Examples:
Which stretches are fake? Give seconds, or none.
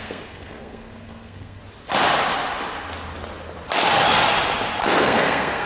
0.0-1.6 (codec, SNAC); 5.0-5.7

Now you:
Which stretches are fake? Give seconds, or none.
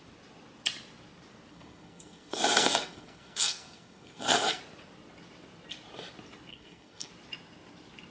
1.5-4.6 (codec, SNAC); 6.5-7.1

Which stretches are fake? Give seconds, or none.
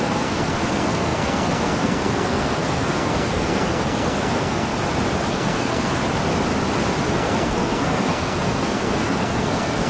0.0-4.7 (codec, SNAC); 5.3-6.0; 7.1-9.9